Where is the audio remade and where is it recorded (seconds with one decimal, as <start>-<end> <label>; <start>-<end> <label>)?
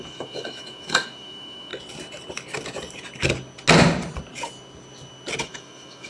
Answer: 0.0-1.7 remade; 1.7-5.4 recorded; 5.4-6.1 remade